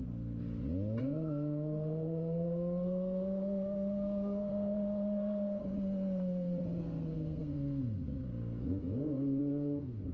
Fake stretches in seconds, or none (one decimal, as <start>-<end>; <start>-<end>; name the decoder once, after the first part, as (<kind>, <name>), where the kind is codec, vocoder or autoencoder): 0.0-0.4 (codec, SNAC); 1.0-5.6; 6.8-10.1